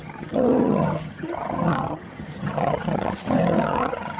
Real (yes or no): no